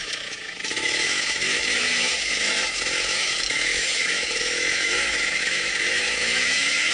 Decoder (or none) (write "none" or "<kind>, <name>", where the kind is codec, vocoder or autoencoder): autoencoder, DAC-VAE